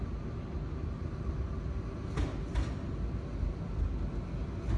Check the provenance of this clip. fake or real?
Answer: real